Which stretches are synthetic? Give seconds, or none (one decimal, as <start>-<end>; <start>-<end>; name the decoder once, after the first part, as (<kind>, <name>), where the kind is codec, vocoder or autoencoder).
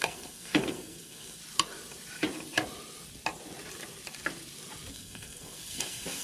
0.0-1.4 (codec, SNAC); 4.9-6.2